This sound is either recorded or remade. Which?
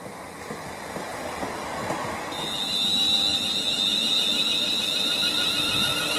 recorded